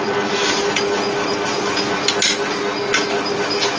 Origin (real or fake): real